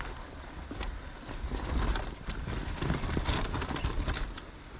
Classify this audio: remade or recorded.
recorded